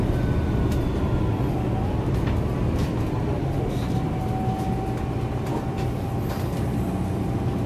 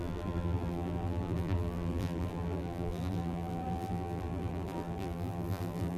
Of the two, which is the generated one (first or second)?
second